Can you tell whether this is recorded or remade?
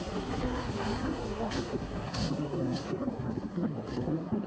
remade